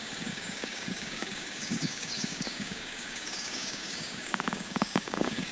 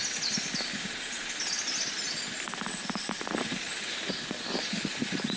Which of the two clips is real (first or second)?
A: second